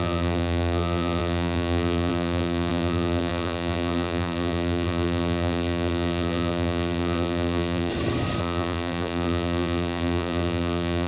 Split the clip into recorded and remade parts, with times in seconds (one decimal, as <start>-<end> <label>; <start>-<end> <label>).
0.0-7.9 remade; 7.9-8.4 recorded; 8.4-11.1 remade